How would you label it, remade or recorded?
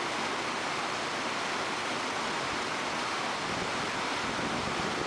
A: recorded